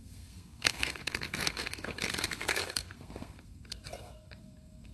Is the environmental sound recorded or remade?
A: remade